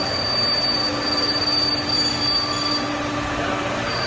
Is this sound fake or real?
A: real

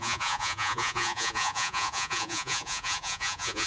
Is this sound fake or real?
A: fake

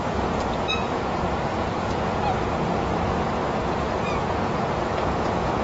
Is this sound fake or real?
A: fake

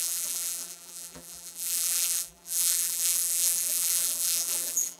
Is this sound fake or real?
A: fake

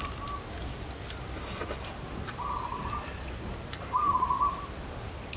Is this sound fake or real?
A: real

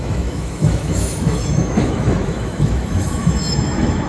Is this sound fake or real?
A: fake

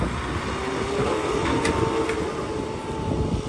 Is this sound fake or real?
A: real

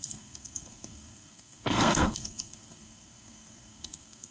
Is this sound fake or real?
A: fake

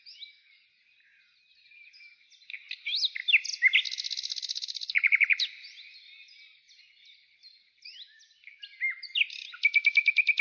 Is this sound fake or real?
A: real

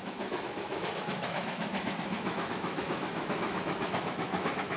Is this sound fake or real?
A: fake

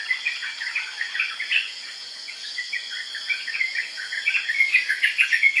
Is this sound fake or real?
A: fake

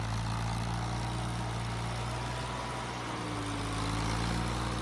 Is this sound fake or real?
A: real